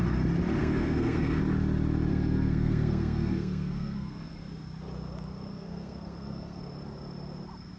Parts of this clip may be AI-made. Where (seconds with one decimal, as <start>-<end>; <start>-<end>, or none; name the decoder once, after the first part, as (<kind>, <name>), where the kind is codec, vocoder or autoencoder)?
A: 0.6-1.4 (codec, SNAC); 2.1-4.5; 5.5-6.6